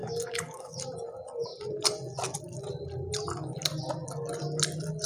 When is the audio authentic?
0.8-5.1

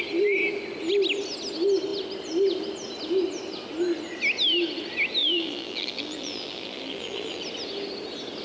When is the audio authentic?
0.0-5.2; 7.4-8.4

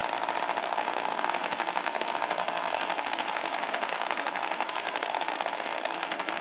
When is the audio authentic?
0.0-0.6

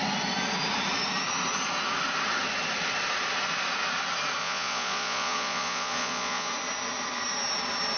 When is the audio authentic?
0.0-4.4; 6.5-8.0

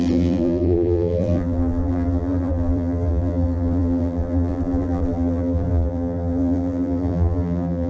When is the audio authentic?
none